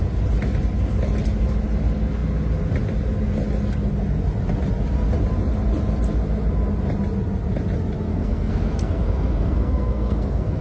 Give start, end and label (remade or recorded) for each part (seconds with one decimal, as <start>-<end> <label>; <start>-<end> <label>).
0.0-8.1 recorded; 8.1-10.6 remade